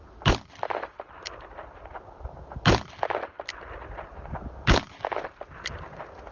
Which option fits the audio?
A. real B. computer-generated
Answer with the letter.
A